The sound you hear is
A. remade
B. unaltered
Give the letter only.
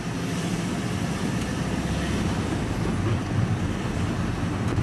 B